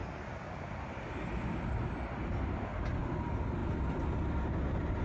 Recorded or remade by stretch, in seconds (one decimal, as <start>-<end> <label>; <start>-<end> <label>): 0.0-5.0 recorded